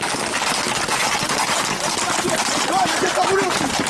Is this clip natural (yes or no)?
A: yes